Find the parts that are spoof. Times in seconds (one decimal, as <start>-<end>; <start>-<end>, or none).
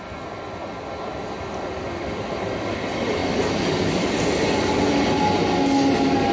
3.2-4.1